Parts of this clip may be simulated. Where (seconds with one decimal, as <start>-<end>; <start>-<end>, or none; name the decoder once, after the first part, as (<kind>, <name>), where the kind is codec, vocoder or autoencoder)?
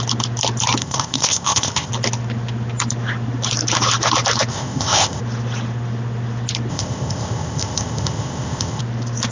0.8-1.9 (codec, ZipCodec); 4.5-5.2; 6.7-8.8